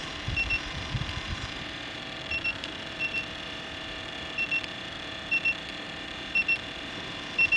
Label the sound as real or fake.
real